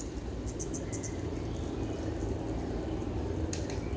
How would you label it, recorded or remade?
recorded